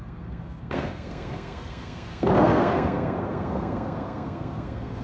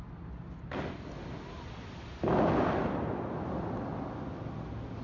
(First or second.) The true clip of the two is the second